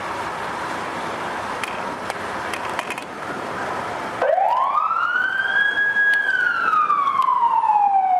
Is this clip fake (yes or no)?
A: no